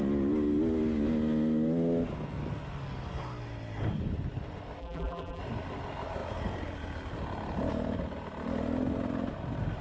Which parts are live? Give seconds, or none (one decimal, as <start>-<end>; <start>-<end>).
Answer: 0.0-4.8; 5.4-9.8